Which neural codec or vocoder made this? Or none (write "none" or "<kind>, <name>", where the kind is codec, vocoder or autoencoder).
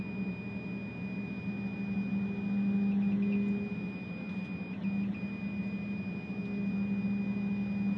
none